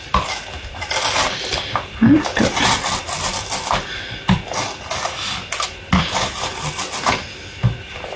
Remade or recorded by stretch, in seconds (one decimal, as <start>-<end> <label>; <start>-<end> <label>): 0.0-8.2 recorded